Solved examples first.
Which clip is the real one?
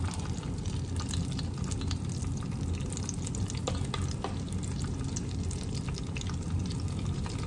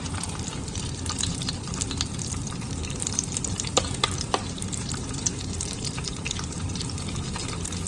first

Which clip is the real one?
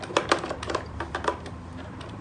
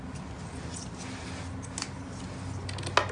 second